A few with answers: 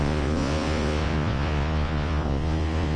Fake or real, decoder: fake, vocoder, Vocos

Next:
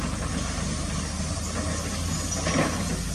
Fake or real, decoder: real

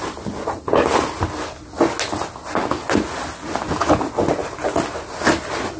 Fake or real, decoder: real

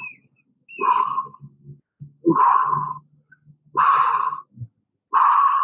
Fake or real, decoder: real